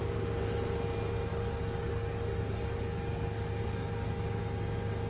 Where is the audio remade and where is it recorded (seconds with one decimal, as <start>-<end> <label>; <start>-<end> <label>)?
0.0-1.3 recorded; 1.3-4.4 remade; 4.4-5.1 recorded